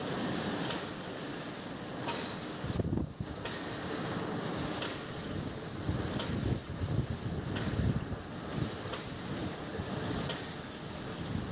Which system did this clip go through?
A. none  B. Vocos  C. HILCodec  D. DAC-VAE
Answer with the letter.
A